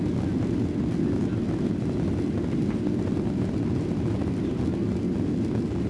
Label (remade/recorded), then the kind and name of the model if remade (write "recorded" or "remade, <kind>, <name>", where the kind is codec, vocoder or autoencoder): recorded